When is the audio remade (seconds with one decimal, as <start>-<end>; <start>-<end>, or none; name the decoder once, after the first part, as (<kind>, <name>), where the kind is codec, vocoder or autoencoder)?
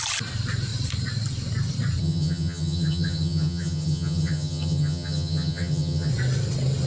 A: 2.0-6.1 (vocoder, HiFi-GAN)